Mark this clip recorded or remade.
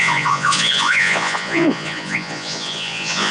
remade